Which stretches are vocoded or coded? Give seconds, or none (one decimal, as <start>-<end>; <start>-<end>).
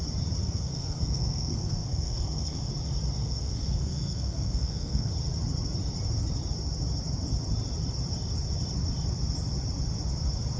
0.4-2.7; 3.2-5.1